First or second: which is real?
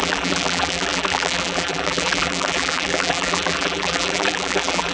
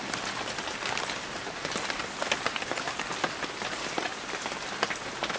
second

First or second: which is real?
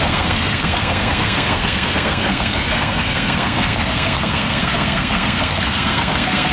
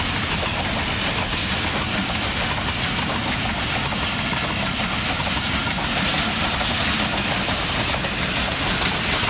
second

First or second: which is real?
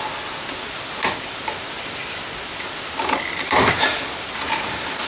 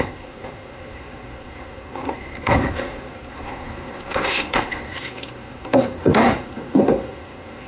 first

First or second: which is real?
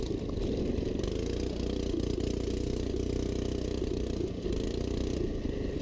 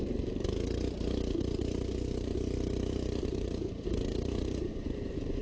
first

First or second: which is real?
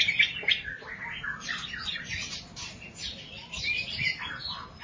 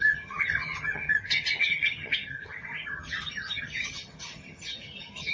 first